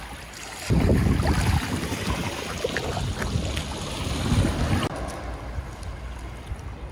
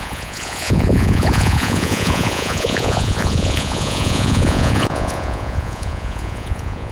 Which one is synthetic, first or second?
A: second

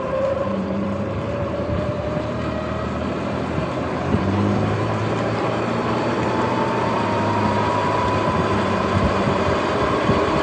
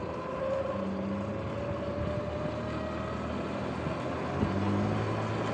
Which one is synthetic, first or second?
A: first